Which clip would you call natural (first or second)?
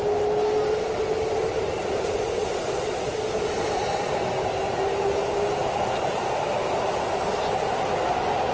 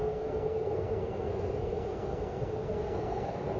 first